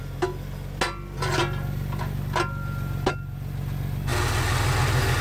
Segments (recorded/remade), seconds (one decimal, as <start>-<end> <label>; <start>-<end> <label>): 0.0-5.2 recorded